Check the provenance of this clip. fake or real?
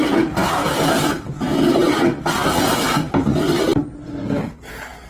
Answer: real